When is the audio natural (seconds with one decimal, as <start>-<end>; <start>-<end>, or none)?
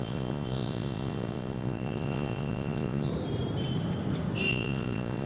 3.1-4.5